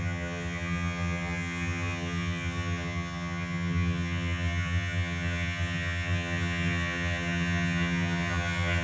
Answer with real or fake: fake